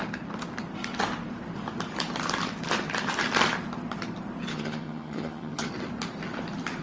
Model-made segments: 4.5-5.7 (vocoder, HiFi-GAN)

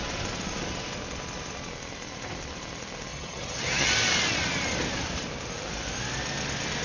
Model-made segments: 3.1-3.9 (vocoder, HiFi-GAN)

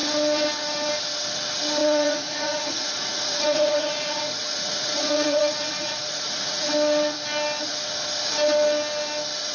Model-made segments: 1.8-6.7 (vocoder, Vocos)

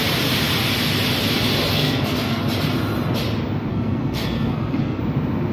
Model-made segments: 1.7-2.4 (codec, SNAC); 3.7-5.0

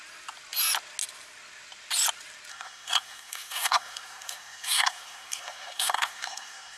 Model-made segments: 2.5-6.8 (codec, SNAC)

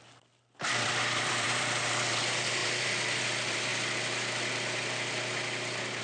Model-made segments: 0.0-3.7 (vocoder, BigVGAN v2)